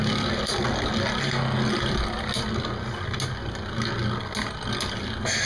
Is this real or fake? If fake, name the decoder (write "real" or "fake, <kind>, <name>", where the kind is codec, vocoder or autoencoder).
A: real